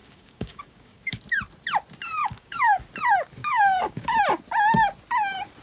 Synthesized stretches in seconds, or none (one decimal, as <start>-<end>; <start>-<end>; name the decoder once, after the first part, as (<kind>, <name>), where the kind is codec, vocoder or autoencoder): 0.0-1.2 (codec, DAC); 2.2-2.8; 3.4-4.2